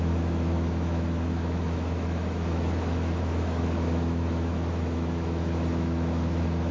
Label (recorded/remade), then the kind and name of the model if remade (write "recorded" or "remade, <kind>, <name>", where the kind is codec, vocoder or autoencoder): remade, autoencoder, DAC-VAE